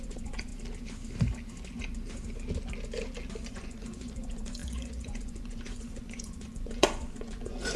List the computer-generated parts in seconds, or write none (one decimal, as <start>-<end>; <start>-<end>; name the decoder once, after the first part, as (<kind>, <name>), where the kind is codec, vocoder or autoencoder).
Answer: 0.0-0.5 (vocoder, Vocos); 3.5-7.8